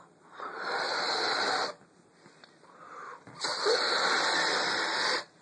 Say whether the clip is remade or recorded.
remade